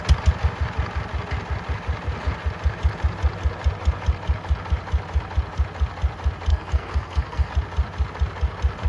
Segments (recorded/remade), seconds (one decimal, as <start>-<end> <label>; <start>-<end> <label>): 0.0-6.5 recorded; 6.5-7.5 remade; 7.5-8.9 recorded

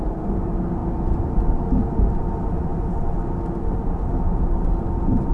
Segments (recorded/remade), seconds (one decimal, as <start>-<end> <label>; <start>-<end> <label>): 0.0-5.3 recorded

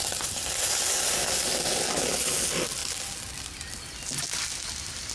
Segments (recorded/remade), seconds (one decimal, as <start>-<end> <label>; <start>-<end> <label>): 0.0-5.1 recorded

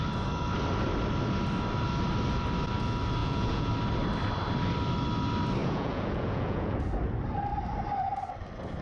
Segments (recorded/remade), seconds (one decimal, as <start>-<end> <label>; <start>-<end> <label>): 0.0-3.2 recorded; 3.2-3.7 remade; 3.7-5.6 recorded; 5.6-6.8 remade; 6.8-8.8 recorded

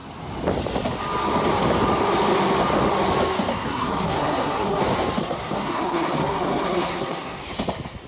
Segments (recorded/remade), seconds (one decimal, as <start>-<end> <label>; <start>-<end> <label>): 0.0-3.5 recorded; 3.5-4.8 remade; 4.8-5.2 recorded; 5.2-7.4 remade; 7.4-8.1 recorded

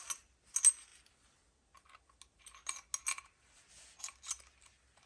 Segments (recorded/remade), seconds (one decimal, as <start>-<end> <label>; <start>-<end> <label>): 0.0-5.1 recorded